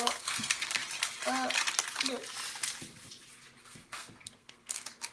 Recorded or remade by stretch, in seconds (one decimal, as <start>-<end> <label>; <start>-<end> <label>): 0.0-0.8 remade; 0.8-3.6 recorded; 3.6-5.1 remade